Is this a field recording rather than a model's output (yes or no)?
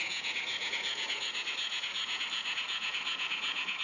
no